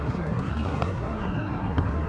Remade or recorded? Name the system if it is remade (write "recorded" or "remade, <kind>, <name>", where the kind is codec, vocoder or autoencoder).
remade, codec, SNAC